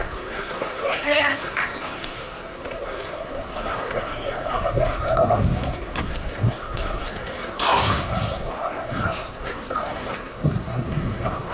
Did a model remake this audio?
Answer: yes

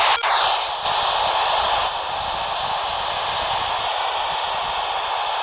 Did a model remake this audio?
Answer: no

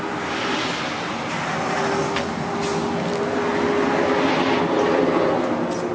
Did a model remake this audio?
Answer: no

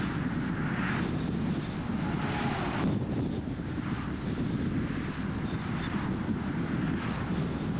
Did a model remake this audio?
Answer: no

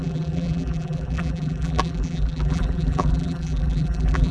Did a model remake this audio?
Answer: yes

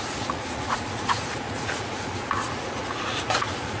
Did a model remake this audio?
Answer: yes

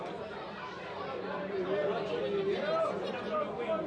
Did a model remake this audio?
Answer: no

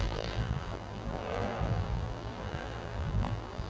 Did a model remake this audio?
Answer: yes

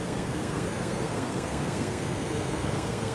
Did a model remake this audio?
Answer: yes